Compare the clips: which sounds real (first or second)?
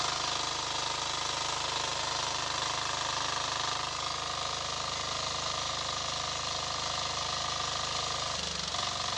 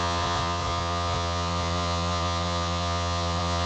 first